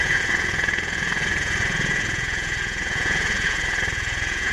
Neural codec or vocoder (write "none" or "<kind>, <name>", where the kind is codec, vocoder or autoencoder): vocoder, Vocos